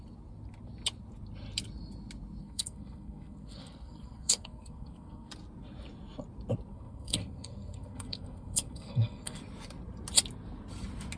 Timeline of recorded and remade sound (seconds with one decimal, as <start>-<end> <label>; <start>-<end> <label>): 0.0-2.4 recorded; 2.4-5.3 remade; 5.3-6.7 recorded; 6.7-9.4 remade; 9.4-11.2 recorded